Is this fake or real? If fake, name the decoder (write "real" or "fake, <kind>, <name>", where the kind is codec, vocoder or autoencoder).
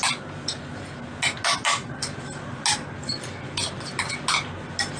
real